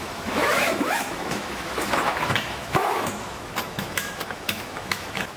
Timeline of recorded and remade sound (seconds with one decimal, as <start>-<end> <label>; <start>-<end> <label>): 0.0-5.4 remade